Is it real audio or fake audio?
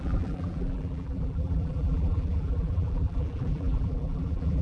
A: fake